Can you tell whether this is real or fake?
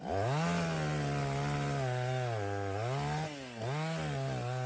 real